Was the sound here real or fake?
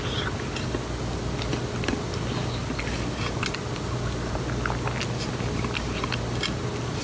real